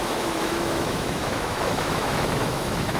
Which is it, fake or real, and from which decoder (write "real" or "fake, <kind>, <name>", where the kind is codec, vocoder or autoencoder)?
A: fake, autoencoder, DAC-VAE